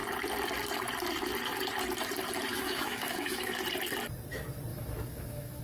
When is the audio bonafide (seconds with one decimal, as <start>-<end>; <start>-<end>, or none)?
0.0-2.5; 3.5-4.7